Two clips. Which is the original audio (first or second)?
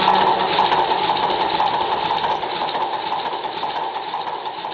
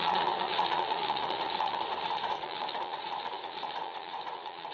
first